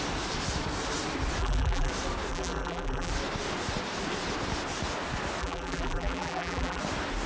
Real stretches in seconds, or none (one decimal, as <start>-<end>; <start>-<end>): 0.0-1.4; 1.9-2.3; 3.1-5.4; 6.8-7.3